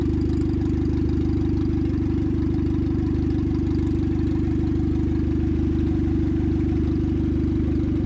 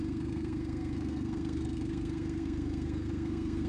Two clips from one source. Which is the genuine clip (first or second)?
first